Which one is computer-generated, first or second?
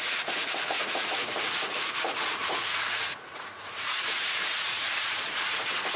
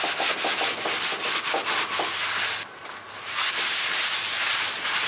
first